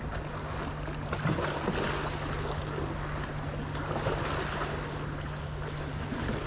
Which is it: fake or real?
real